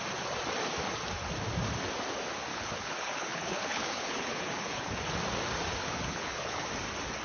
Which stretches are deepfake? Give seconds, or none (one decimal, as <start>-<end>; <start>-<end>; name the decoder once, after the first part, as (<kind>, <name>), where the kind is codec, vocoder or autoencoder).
2.5-4.9 (codec, HILCodec); 5.8-6.7